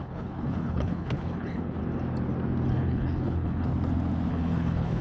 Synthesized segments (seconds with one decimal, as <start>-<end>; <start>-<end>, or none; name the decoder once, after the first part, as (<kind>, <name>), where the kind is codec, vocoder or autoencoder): 0.0-1.8 (codec, HILCodec); 2.7-3.7; 4.3-5.0